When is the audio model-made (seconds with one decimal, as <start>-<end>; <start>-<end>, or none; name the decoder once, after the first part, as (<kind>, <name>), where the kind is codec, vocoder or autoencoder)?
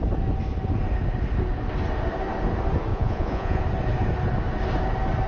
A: 2.9-3.6 (vocoder, Vocos)